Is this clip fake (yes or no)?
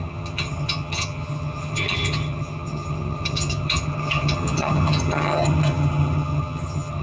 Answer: yes